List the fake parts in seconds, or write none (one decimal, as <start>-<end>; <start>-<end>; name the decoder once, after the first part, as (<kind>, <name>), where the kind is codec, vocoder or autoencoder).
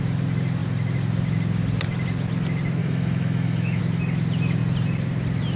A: 2.8-3.8 (autoencoder, DAC-VAE)